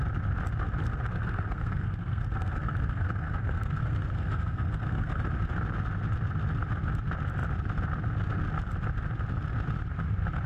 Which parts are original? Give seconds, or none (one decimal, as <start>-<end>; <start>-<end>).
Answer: 0.0-0.8; 5.3-10.5